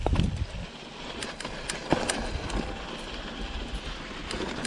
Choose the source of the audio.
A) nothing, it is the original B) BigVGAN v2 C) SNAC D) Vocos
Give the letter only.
A